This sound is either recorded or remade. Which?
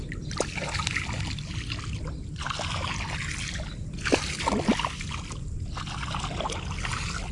recorded